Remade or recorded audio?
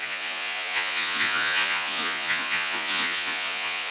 remade